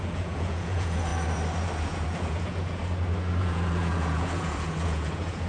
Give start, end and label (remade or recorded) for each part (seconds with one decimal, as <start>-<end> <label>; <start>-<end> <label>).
0.0-1.1 remade; 1.1-1.8 recorded; 1.8-2.8 remade; 2.8-3.4 recorded; 3.4-5.5 remade

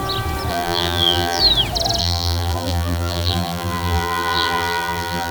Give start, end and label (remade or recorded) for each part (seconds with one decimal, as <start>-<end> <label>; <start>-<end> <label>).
0.0-0.5 recorded; 0.5-1.4 remade; 1.4-2.0 recorded; 2.0-5.3 remade

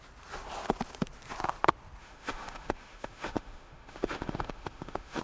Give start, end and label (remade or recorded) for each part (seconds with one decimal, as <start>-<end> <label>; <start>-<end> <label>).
0.0-2.0 recorded; 2.0-5.2 remade

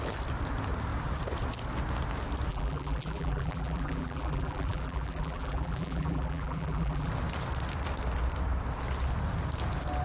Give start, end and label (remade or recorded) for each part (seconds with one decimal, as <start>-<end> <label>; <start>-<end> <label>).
0.0-2.5 recorded; 2.5-7.1 remade; 7.1-10.0 recorded

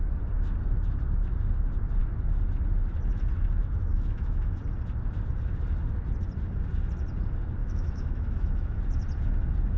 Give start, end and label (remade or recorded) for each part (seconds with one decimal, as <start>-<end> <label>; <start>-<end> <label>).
0.0-3.9 recorded; 3.9-4.6 remade; 4.6-7.6 recorded; 7.6-8.8 remade; 8.8-9.8 recorded

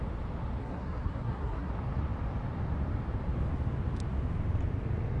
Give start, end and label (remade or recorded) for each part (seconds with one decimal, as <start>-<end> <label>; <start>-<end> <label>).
0.0-0.6 recorded; 0.6-1.7 remade; 1.7-5.2 recorded

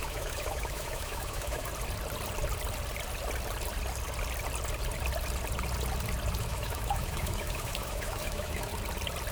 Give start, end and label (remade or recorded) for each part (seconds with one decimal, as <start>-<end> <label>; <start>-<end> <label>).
0.0-1.7 remade; 1.7-6.4 recorded; 6.4-8.7 remade; 8.7-9.3 recorded

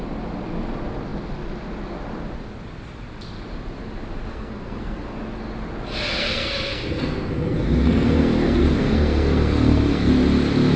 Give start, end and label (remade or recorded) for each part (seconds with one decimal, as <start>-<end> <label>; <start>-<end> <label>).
0.0-4.3 recorded; 4.3-5.2 remade; 5.2-6.2 recorded; 6.2-10.1 remade; 10.1-10.8 recorded